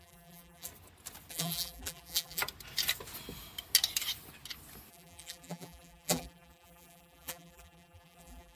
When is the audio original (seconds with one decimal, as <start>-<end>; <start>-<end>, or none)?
0.7-1.3; 2.4-4.9